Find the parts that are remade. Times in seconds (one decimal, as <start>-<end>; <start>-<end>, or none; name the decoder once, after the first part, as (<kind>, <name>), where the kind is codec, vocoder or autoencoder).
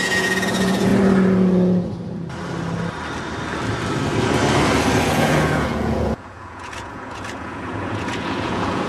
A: 0.0-0.9 (vocoder, Vocos); 5.1-8.9